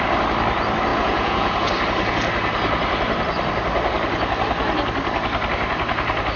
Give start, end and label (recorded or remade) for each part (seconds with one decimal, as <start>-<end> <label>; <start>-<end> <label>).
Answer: 0.0-0.9 recorded; 0.9-1.7 remade; 1.7-6.4 recorded